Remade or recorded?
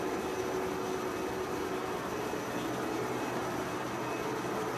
recorded